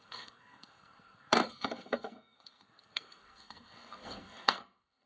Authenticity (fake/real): fake